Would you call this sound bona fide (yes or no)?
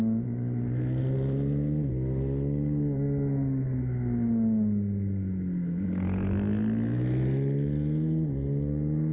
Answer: yes